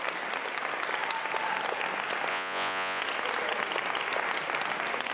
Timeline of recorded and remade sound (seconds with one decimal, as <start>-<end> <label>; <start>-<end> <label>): 0.0-2.3 recorded; 2.3-3.0 remade; 3.0-5.1 recorded